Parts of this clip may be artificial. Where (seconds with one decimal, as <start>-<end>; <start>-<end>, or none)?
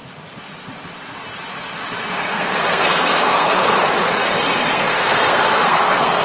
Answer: 2.2-3.7; 4.7-6.2